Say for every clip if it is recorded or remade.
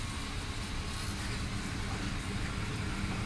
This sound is recorded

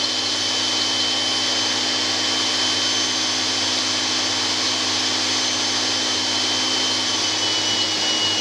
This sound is recorded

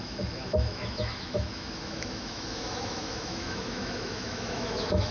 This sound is remade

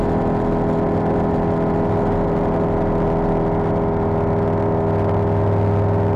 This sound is recorded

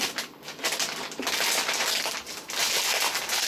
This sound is recorded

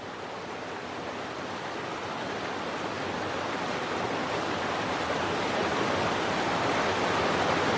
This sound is recorded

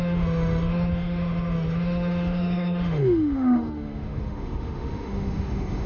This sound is remade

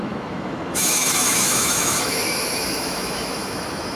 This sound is remade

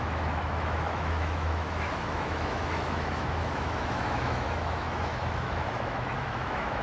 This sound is remade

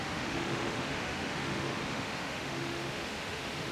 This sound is remade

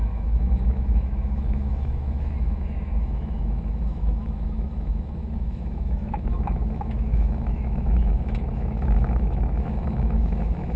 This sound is remade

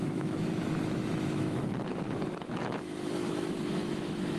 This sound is remade